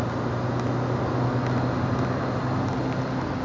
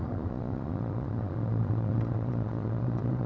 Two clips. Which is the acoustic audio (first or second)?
first